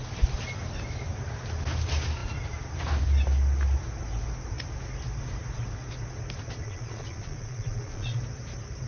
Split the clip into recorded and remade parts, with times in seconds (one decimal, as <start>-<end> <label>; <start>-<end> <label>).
0.0-6.6 recorded; 6.6-8.2 remade; 8.2-8.9 recorded